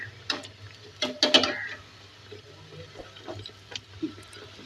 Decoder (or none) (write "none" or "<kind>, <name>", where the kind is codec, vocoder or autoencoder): none